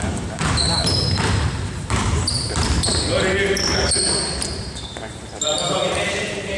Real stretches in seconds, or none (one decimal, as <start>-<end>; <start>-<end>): 2.9-4.6